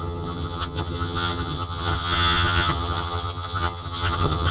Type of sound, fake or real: fake